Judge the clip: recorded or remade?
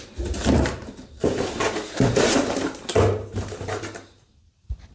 remade